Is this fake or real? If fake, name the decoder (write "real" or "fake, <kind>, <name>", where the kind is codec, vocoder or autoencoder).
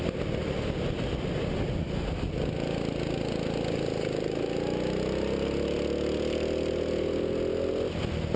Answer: real